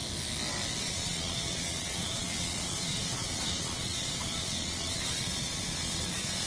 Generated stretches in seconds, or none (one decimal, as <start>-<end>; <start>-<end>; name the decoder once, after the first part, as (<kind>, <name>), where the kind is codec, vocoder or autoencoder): 0.8-6.5 (vocoder, Vocos)